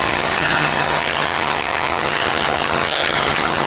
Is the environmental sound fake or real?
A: fake